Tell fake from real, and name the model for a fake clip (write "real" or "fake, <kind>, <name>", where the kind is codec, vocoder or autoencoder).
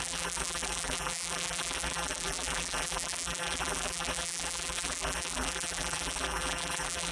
fake, vocoder, BigVGAN v2